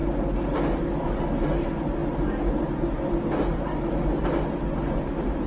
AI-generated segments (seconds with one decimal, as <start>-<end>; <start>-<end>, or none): none